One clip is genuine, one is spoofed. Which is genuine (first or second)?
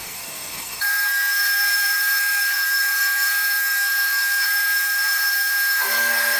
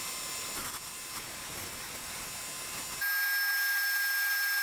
second